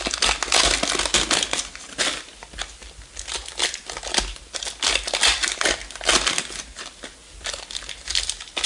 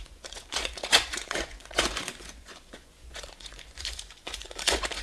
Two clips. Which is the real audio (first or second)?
first